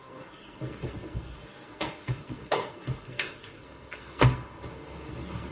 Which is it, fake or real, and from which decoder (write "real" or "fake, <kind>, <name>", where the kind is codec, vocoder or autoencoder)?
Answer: fake, codec, SNAC